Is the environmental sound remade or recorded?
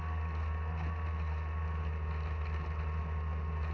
recorded